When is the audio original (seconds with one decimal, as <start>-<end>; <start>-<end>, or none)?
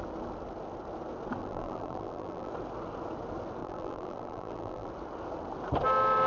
0.0-1.4; 2.5-3.6; 4.9-6.3